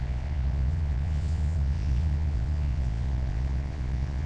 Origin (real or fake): fake